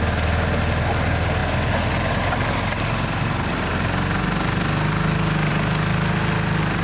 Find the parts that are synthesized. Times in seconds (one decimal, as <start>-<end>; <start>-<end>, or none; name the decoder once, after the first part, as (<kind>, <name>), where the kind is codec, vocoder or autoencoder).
none